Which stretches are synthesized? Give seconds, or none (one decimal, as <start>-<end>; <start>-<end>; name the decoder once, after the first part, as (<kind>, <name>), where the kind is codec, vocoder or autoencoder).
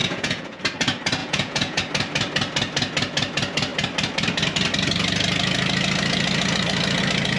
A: 0.0-0.6 (vocoder, Vocos); 1.2-1.8